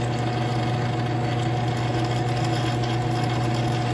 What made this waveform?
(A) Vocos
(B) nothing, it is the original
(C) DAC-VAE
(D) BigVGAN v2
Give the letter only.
B